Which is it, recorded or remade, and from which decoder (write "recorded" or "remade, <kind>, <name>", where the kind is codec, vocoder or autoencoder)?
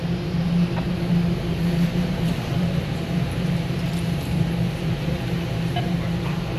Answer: remade, vocoder, BigVGAN v2